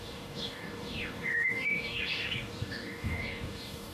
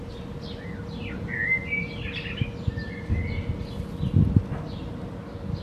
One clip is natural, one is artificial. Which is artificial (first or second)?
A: first